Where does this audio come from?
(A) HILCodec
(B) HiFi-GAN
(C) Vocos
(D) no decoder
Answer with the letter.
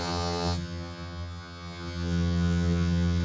B